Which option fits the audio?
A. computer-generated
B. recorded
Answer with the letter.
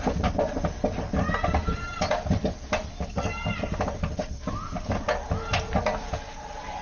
B